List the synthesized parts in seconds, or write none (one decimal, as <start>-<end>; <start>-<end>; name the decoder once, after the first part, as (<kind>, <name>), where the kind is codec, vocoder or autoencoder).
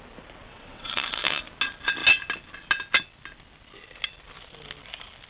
0.5-1.4 (vocoder, WaveNeXt)